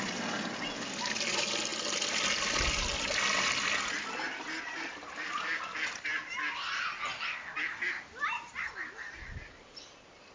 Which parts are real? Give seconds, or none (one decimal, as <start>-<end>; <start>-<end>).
0.0-10.3